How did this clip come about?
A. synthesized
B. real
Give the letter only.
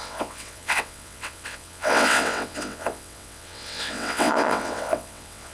A